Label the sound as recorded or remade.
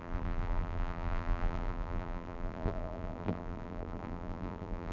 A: remade